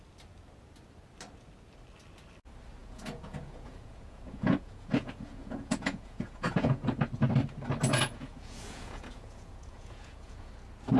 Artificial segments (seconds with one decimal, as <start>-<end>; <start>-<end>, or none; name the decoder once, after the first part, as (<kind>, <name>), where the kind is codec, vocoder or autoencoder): 2.8-7.0 (vocoder, Vocos); 7.9-10.5